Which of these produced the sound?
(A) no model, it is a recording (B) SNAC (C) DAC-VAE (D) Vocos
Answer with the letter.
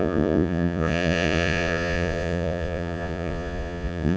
D